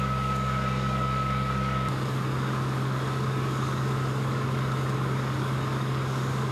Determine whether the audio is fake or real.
fake